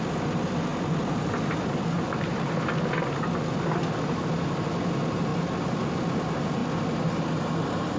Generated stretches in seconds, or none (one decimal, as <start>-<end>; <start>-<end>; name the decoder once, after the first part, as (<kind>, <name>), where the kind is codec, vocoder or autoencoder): 0.7-4.2 (vocoder, BigVGAN v2); 5.3-6.0; 6.6-7.2